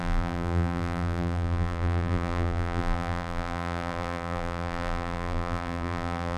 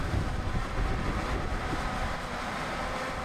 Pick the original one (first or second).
second